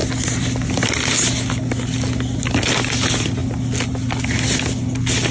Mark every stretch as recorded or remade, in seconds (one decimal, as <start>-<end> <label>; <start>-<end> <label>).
0.0-5.3 recorded